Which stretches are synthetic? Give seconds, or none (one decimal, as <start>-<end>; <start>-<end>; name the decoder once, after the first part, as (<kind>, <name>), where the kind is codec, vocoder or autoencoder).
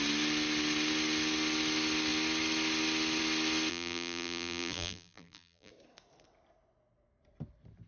3.7-5.7 (vocoder, BigVGAN v2)